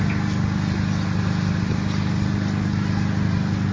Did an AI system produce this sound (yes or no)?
no